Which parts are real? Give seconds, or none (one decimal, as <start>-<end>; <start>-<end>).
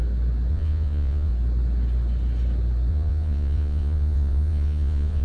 0.0-0.5; 1.3-2.9